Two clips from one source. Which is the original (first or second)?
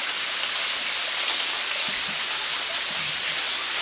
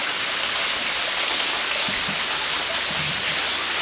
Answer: second